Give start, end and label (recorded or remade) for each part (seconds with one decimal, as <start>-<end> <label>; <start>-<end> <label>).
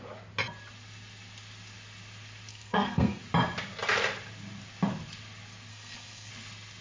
0.0-2.5 recorded; 2.5-3.2 remade; 3.2-5.7 recorded; 5.7-6.3 remade; 6.3-6.8 recorded